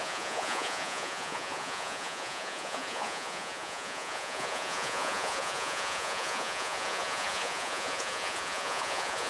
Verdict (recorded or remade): remade